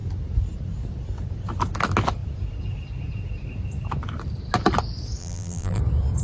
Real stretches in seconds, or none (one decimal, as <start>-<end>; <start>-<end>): 0.0-5.2; 5.8-6.2